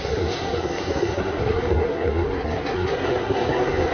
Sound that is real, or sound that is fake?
fake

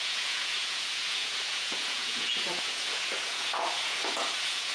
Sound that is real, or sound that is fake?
fake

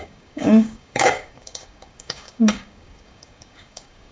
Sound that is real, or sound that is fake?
fake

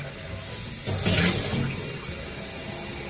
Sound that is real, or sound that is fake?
real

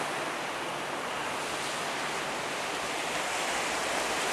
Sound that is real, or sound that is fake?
real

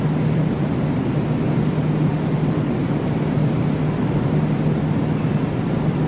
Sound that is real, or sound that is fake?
real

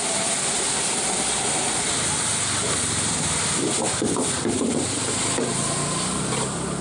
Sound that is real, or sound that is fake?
real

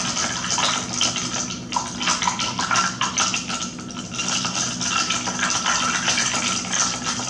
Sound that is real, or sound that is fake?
real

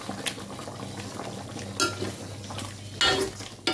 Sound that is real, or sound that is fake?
real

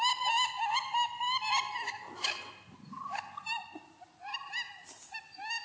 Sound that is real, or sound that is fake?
real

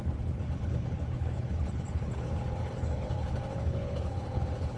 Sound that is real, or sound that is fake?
fake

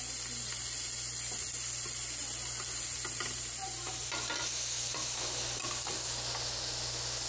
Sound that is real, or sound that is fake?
real